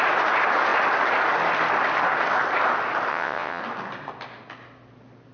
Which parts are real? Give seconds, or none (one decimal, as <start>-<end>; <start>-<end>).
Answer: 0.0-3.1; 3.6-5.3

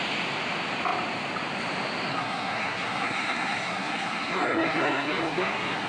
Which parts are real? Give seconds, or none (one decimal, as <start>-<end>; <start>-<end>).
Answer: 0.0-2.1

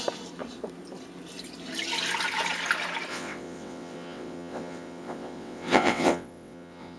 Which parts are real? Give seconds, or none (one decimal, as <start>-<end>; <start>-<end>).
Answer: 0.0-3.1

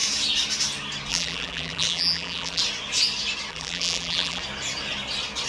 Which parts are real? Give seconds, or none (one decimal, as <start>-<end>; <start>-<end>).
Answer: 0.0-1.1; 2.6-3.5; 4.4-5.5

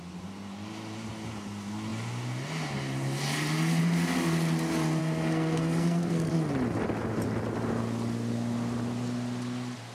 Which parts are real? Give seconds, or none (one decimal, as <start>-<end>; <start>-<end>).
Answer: 0.0-5.0; 6.3-9.9

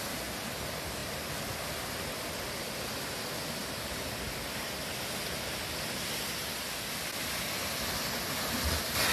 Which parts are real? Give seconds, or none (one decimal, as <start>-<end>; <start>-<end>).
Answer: 0.0-9.1